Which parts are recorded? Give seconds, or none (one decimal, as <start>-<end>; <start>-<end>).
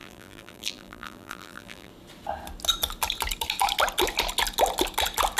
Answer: 1.9-5.4